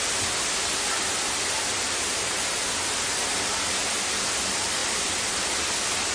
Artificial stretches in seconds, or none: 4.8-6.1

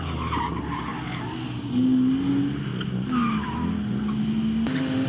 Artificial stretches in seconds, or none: none

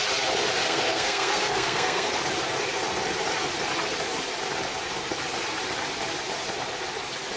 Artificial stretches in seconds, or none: 0.6-2.2

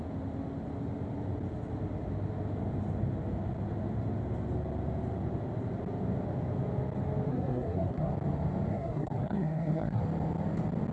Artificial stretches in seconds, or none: 7.3-8.1; 8.7-10.0

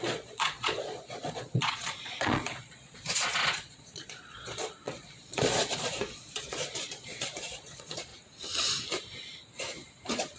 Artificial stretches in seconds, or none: 0.0-8.1; 9.9-10.4

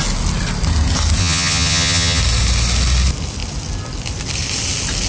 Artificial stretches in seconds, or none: 1.2-2.2

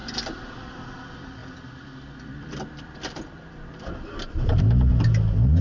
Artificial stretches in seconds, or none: 0.0-0.7; 1.4-4.6